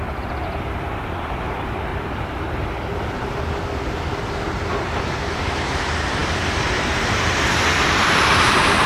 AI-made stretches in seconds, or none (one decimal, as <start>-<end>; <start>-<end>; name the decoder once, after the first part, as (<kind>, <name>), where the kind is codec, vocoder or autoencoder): 0.0-1.9 (vocoder, BigVGAN v2); 5.4-8.9